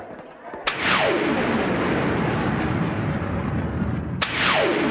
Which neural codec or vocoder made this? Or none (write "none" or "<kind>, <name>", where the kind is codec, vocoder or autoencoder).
none